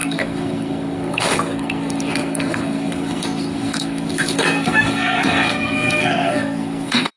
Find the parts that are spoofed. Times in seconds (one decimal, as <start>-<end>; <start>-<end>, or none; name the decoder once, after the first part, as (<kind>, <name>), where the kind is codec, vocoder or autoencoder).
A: 0.0-7.2 (codec, SNAC)

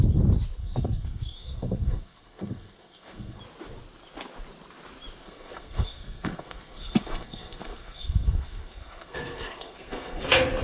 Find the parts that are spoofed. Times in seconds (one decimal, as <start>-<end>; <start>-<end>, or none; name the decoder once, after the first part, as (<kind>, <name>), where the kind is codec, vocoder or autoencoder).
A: 0.6-3.4 (codec, SNAC); 5.2-10.2

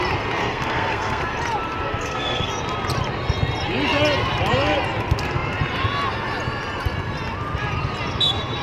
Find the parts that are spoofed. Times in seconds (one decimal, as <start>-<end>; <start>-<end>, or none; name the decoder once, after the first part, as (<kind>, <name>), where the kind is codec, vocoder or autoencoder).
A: 0.4-1.2 (codec, SNAC); 1.9-2.5